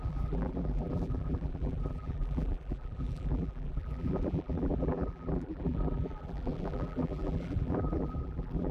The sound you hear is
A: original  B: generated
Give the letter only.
B